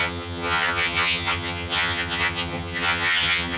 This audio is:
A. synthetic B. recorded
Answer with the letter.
A